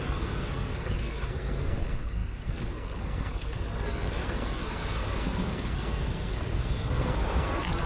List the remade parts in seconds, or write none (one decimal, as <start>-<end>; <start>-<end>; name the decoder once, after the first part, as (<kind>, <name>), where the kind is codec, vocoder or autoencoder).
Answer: 0.0-7.9 (codec, SNAC)